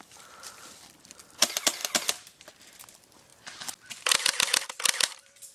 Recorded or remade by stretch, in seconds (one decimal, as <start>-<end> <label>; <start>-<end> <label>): 0.0-1.8 remade; 1.8-2.6 recorded; 2.6-3.3 remade; 3.3-4.0 recorded; 4.0-5.5 remade